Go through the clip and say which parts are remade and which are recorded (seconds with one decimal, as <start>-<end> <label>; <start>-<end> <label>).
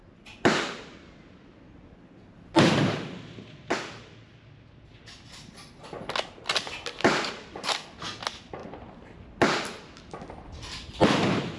0.0-11.6 recorded